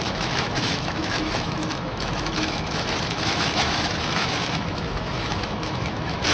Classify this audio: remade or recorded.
remade